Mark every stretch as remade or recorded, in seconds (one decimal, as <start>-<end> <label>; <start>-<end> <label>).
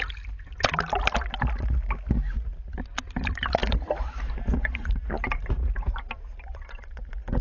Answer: 0.0-3.6 recorded; 3.6-6.9 remade; 6.9-7.4 recorded